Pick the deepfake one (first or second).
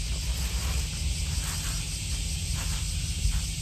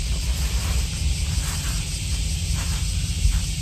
second